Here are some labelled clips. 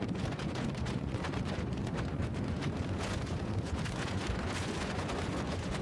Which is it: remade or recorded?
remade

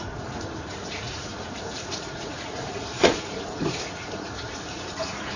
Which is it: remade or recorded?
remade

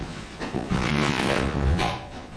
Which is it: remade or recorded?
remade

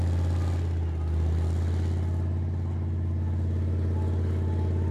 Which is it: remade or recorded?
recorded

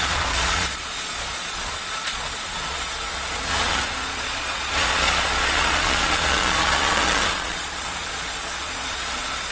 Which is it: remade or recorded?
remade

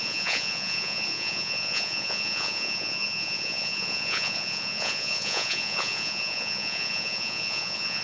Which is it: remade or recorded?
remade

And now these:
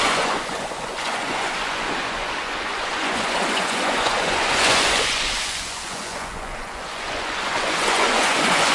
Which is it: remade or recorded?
remade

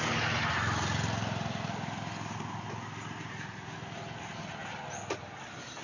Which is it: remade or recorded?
recorded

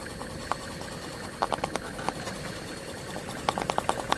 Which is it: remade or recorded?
recorded